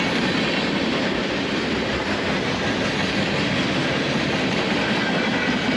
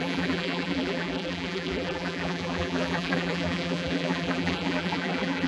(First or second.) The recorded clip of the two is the first